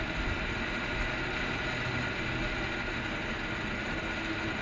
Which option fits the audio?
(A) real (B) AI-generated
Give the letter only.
A